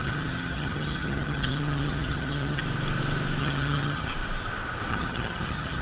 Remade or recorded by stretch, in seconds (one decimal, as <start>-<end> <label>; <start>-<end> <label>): 0.0-2.6 remade; 2.6-3.4 recorded; 3.4-4.1 remade; 4.1-4.9 recorded; 4.9-5.8 remade